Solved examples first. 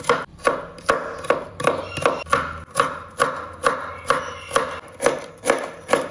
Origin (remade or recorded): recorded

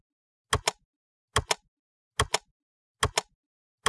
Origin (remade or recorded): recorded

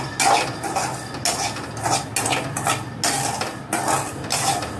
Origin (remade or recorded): recorded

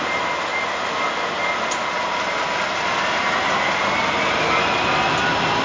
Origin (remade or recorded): recorded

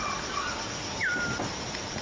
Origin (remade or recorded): recorded